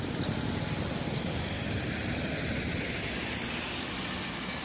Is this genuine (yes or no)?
yes